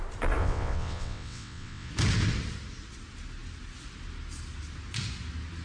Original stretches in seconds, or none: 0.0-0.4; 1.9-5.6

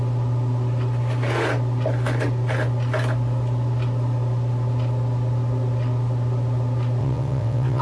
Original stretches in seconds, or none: 0.0-7.0

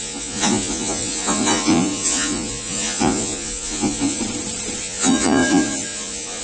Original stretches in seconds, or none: 4.2-4.8

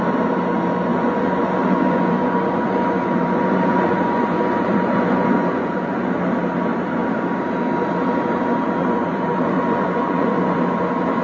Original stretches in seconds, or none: 0.0-0.9; 6.1-8.8; 10.6-11.2

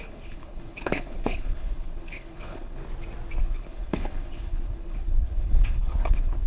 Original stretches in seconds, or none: 2.8-3.4

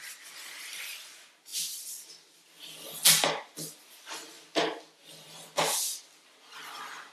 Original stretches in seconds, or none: 0.0-7.1